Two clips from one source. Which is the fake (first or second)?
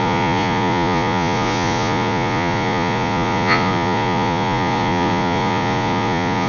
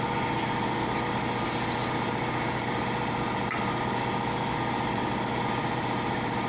first